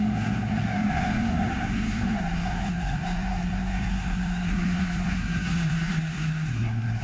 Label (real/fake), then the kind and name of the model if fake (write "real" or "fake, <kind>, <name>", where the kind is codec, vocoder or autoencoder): fake, codec, SNAC